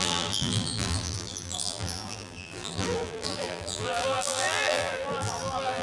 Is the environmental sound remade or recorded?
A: remade